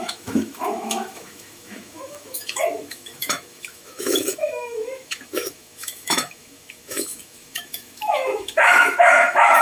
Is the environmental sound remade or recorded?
remade